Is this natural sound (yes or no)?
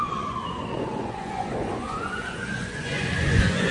no